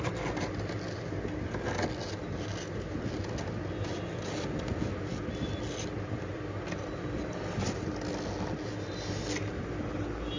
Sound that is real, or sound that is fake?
real